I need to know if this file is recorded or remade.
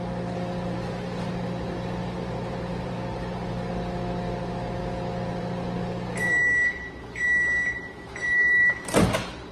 recorded